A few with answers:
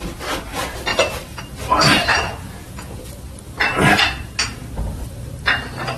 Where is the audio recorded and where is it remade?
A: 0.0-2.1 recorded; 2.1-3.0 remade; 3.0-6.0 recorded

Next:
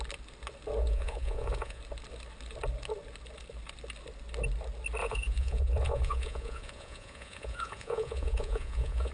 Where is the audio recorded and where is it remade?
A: 0.0-0.8 recorded; 0.8-1.8 remade; 1.8-5.0 recorded; 5.0-9.1 remade

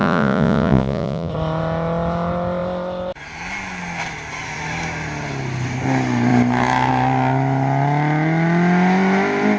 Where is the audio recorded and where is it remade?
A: 0.0-1.3 remade; 1.3-9.6 recorded

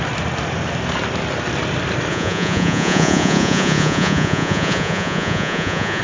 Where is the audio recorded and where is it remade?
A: 0.0-2.1 recorded; 2.1-6.0 remade

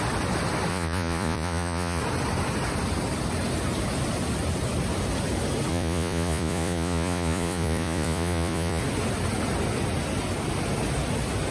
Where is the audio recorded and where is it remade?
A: 0.0-0.7 recorded; 0.7-2.0 remade; 2.0-5.7 recorded; 5.7-8.8 remade; 8.8-11.5 recorded

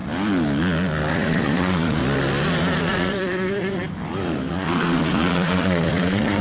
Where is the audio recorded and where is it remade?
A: 0.0-1.1 recorded; 1.1-2.0 remade; 2.0-2.8 recorded; 2.8-3.8 remade; 3.8-4.5 recorded; 4.5-6.4 remade